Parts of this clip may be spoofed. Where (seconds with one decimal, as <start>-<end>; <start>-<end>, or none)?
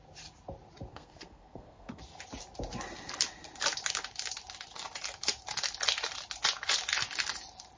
0.9-2.0